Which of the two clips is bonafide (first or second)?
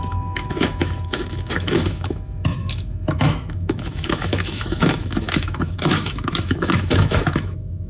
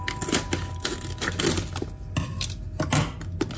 second